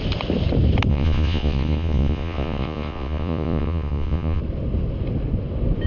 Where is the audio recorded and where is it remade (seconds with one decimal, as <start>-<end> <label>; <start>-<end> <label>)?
0.0-0.9 recorded; 0.9-4.4 remade; 4.4-5.9 recorded

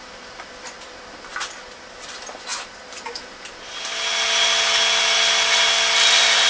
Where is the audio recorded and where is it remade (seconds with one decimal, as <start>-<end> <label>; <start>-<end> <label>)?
0.0-6.5 recorded

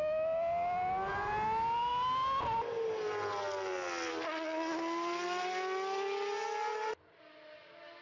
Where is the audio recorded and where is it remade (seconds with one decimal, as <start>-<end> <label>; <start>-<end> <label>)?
0.0-8.0 recorded

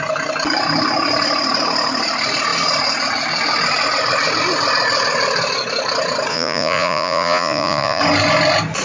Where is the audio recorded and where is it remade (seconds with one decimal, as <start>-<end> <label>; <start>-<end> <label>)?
0.0-6.3 recorded; 6.3-8.0 remade; 8.0-8.8 recorded